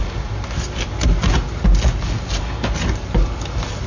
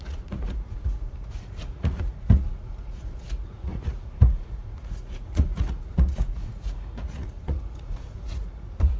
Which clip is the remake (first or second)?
second